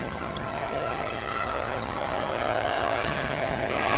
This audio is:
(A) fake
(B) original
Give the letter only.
A